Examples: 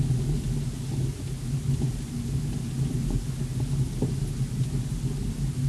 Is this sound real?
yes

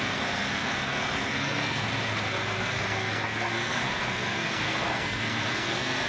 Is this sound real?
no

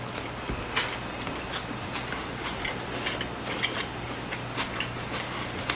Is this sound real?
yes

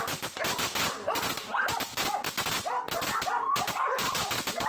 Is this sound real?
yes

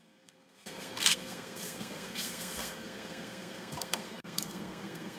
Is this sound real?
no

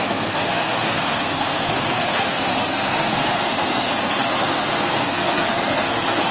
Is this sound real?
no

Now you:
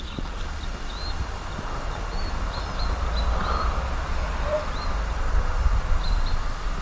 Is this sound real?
yes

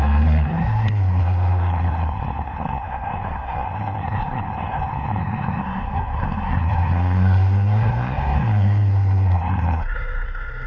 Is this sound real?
no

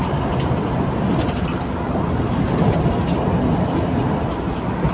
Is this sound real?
yes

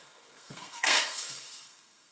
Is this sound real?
no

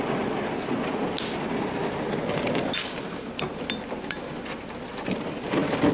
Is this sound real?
yes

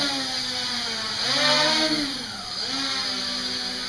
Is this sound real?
yes